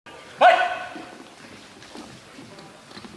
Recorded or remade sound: recorded